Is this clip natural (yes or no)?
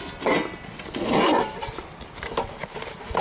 yes